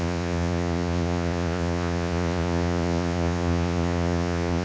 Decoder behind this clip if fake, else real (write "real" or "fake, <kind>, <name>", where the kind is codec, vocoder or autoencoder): fake, vocoder, Vocos